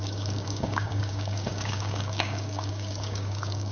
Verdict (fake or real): fake